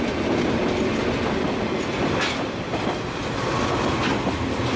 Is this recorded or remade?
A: recorded